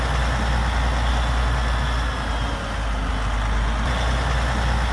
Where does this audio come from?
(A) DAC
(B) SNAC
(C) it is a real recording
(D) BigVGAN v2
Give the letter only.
C